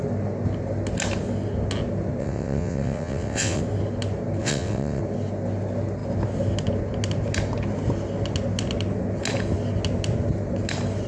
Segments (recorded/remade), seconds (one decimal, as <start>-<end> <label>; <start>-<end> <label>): 0.0-2.2 recorded; 2.2-3.6 remade; 3.6-4.4 recorded; 4.4-5.0 remade; 5.0-11.1 recorded